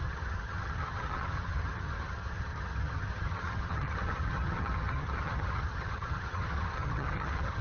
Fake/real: fake